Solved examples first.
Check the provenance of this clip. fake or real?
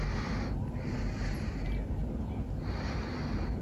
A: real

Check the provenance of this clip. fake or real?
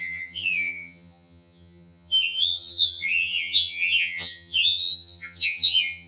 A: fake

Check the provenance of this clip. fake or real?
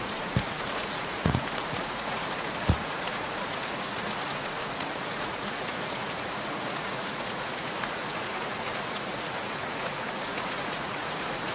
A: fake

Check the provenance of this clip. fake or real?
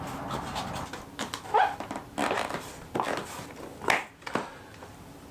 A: real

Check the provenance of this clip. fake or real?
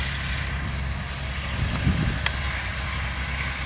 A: real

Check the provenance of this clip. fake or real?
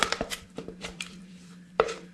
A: fake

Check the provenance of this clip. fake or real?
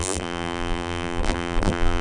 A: fake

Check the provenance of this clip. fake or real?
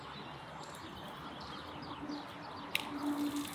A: real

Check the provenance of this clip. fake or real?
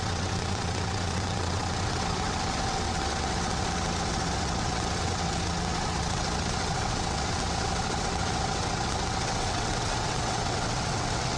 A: fake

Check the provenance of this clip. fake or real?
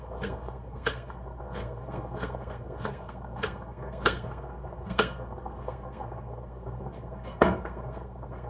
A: fake